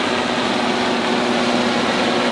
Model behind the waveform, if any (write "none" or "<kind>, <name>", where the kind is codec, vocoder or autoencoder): none